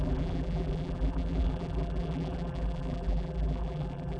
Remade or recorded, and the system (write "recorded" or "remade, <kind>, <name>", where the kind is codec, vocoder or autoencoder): remade, vocoder, BigVGAN v2